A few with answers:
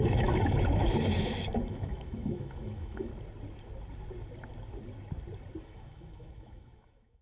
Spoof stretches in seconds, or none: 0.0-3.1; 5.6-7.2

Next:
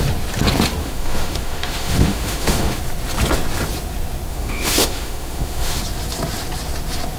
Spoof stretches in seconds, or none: 0.8-2.8; 4.3-5.8

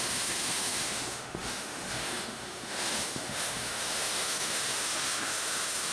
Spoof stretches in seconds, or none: 0.0-5.9

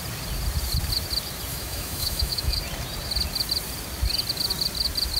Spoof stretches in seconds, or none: 1.5-2.6

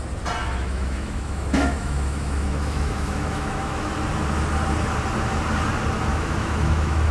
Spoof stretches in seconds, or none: 0.4-3.9; 6.1-7.1

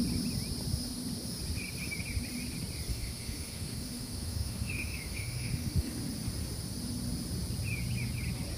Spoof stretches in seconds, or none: 2.9-5.9